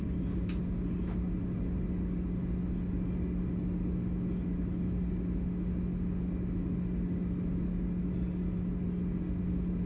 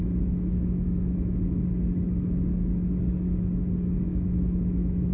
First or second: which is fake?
second